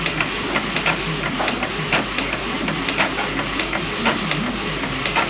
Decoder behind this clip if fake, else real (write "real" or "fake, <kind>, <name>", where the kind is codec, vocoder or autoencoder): real